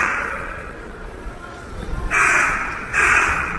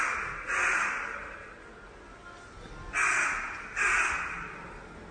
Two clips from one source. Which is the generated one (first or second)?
first